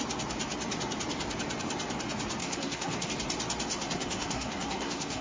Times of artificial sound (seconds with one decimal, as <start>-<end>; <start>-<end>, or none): 2.4-3.1; 3.7-5.2